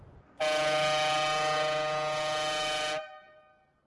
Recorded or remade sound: recorded